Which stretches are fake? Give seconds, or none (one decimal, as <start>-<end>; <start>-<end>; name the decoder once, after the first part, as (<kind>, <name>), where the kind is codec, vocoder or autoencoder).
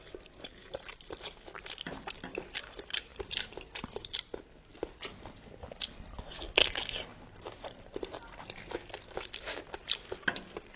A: 0.6-1.5 (vocoder, BigVGAN v2); 7.1-8.6